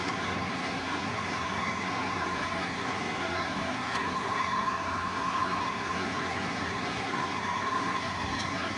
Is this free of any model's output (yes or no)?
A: no